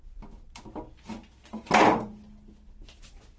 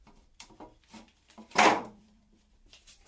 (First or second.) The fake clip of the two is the second